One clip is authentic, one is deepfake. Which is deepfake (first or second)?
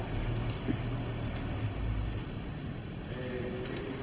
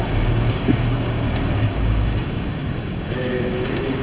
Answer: second